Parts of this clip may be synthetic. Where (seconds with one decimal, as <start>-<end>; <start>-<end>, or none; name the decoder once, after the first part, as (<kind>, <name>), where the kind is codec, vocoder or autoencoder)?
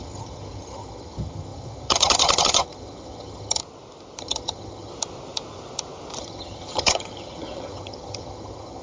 0.0-3.6 (vocoder, HiFi-GAN); 4.2-4.9; 6.2-8.8